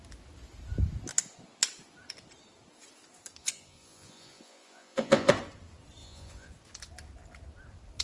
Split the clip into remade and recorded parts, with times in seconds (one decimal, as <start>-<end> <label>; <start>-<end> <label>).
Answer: 0.0-3.4 recorded; 3.4-5.3 remade; 5.3-6.0 recorded; 6.0-6.5 remade; 6.5-8.0 recorded

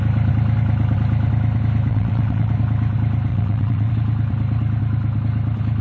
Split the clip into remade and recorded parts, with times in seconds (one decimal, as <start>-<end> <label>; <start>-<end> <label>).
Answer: 0.0-1.9 recorded; 1.9-2.5 remade; 2.5-3.3 recorded; 3.3-3.9 remade; 3.9-5.8 recorded